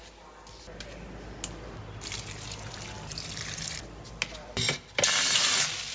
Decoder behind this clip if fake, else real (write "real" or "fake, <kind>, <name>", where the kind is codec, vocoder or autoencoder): real